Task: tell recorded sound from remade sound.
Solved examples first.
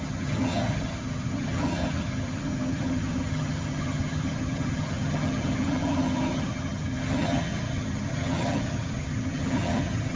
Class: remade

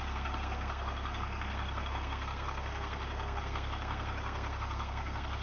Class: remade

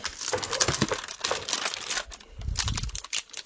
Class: recorded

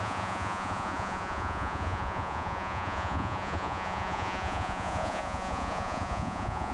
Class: remade